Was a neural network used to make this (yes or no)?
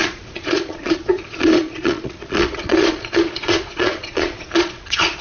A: yes